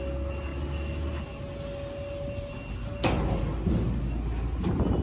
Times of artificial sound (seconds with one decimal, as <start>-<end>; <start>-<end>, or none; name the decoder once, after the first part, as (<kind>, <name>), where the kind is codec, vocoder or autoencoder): none